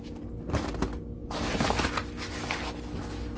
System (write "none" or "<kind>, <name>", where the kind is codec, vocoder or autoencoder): none